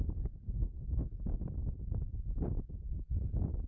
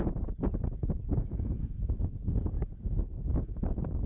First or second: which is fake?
second